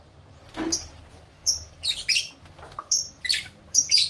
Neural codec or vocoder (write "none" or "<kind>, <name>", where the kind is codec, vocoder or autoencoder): vocoder, BigVGAN v2